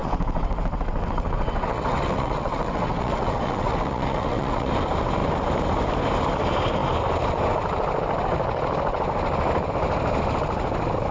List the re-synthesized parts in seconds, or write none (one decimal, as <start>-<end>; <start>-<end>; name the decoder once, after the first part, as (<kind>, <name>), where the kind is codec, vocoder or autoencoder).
0.0-4.7 (vocoder, WaveNeXt)